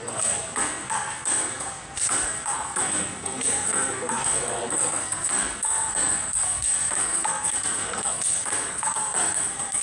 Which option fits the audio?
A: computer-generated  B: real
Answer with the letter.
A